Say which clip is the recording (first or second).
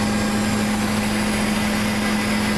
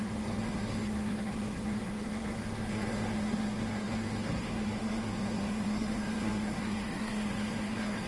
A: first